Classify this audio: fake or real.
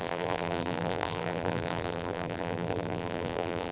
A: fake